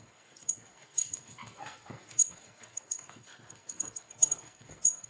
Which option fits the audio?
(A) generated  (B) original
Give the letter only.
A